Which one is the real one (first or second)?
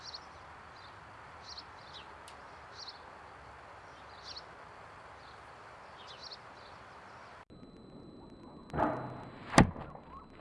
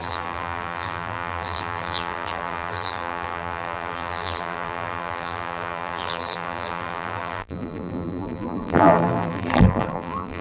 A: first